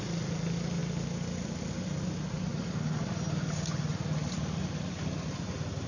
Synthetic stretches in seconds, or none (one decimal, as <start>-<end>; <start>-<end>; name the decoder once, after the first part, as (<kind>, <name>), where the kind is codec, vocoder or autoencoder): none